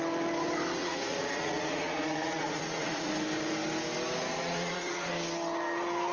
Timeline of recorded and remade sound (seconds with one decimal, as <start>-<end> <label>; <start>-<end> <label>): 0.0-0.8 recorded; 0.8-3.1 remade; 3.1-4.2 recorded; 4.2-5.1 remade; 5.1-6.1 recorded